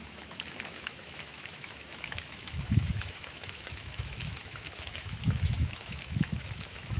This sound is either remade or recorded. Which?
remade